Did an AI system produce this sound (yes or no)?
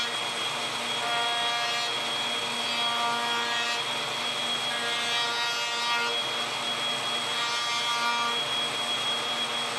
no